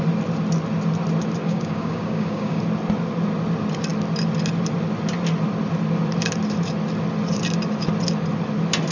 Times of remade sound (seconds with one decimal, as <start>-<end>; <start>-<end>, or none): 1.4-2.6